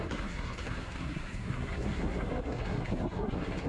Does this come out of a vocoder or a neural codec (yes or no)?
yes